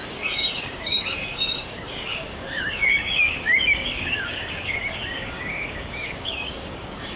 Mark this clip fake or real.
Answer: fake